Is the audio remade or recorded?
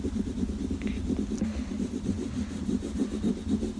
recorded